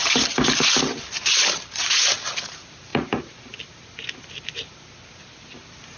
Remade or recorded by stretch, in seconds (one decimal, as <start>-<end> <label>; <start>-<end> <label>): 0.0-2.9 recorded; 2.9-3.4 remade; 3.4-6.0 recorded